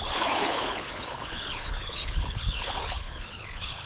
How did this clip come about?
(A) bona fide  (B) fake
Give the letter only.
B